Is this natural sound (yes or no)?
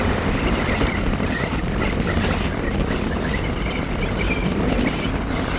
yes